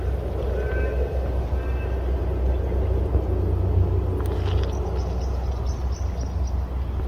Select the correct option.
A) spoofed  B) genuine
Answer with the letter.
B